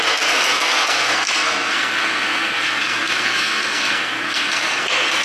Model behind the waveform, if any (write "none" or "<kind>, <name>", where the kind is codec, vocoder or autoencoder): codec, SNAC